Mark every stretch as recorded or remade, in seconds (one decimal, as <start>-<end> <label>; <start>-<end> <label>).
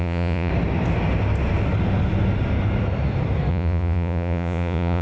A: 0.0-0.5 remade; 0.5-3.5 recorded; 3.5-5.0 remade